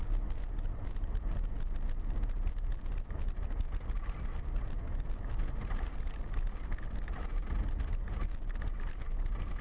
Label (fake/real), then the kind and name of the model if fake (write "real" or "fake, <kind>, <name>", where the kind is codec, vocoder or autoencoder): real